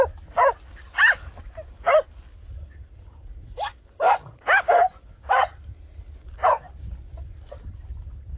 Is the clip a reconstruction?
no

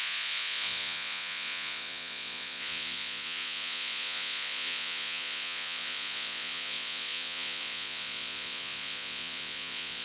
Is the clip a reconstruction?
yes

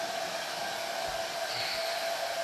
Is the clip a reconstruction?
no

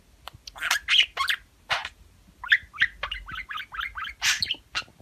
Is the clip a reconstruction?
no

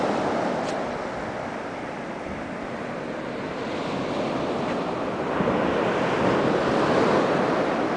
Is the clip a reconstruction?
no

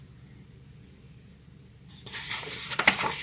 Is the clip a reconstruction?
yes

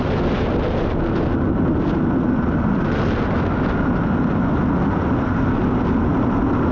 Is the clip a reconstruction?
no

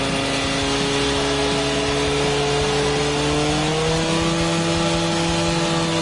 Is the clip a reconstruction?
no